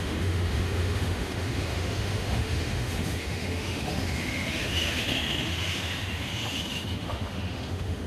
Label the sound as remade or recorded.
remade